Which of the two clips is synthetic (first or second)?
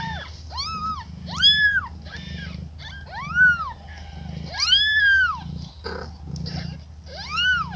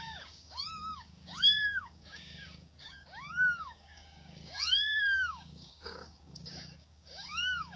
second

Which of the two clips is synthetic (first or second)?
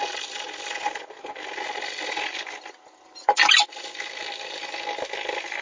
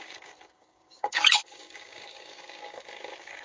second